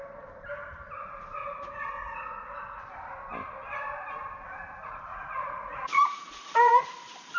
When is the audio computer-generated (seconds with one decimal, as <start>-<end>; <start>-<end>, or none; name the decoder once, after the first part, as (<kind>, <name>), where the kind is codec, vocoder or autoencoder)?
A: 1.4-2.8 (vocoder, Vocos); 5.1-6.8